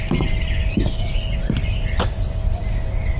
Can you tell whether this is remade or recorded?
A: recorded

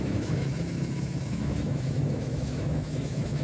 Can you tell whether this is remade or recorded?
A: remade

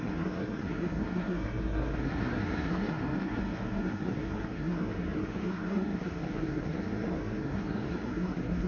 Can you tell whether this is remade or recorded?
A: remade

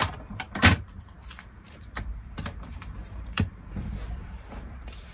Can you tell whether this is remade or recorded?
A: remade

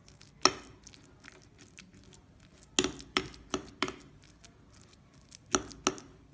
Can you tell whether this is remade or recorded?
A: recorded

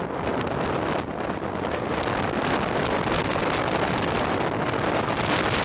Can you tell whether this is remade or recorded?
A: recorded